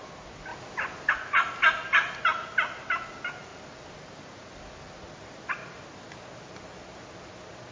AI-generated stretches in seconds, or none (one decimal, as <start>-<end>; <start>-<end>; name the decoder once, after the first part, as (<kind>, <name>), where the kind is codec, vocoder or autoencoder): none